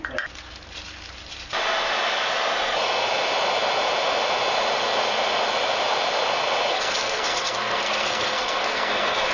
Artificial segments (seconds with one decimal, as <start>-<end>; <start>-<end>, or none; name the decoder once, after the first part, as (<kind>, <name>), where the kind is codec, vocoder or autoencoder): 6.7-9.3 (codec, SNAC)